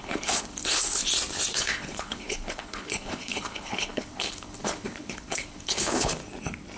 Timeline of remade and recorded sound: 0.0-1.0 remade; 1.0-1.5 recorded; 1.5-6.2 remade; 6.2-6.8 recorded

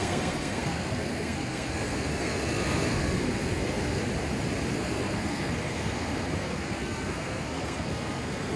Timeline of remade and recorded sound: 0.0-4.0 remade; 4.0-4.7 recorded; 4.7-8.6 remade

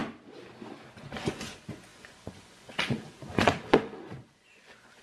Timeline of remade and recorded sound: 0.0-1.0 recorded; 1.0-5.0 remade

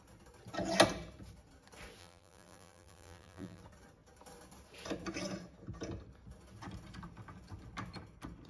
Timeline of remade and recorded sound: 0.0-2.0 recorded; 2.0-3.6 remade; 3.6-8.5 recorded

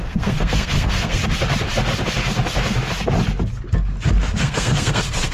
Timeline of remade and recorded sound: 0.0-1.2 remade; 1.2-4.4 recorded; 4.4-5.3 remade